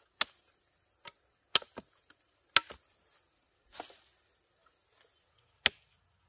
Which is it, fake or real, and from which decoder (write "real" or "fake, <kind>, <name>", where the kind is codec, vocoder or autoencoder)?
real